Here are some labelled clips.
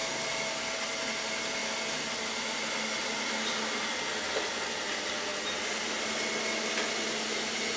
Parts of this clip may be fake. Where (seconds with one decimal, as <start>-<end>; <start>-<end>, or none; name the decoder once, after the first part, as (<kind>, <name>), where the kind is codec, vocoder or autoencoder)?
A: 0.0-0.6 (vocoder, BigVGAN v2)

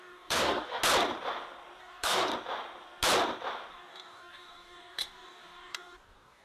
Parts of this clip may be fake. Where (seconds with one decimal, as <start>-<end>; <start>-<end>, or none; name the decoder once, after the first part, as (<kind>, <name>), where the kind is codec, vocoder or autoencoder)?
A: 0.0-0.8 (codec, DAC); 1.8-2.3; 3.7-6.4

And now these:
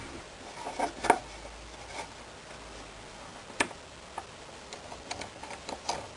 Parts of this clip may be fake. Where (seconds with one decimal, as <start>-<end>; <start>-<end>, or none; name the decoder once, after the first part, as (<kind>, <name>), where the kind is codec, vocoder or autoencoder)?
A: none